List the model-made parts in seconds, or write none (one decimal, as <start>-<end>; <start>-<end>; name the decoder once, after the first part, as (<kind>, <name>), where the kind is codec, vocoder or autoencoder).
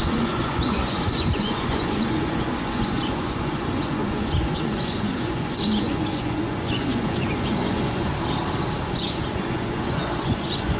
0.0-8.1 (vocoder, Vocos); 8.8-10.8